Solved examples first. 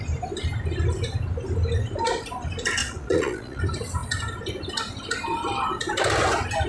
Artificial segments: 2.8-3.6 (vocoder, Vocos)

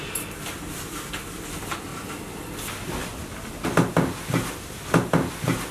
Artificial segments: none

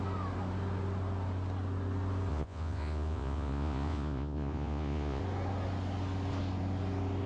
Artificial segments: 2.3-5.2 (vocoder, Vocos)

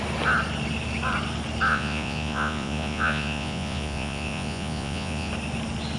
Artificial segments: 1.7-5.3 (vocoder, Vocos)

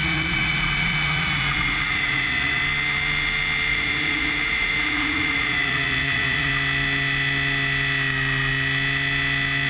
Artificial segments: 0.0-2.6 (vocoder, Vocos); 3.7-6.5

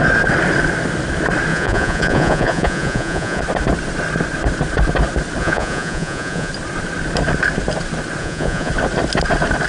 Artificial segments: 1.5-3.4 (vocoder, Vocos); 5.4-6.5; 8.2-8.7

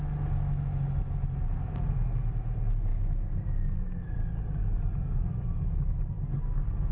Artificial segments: none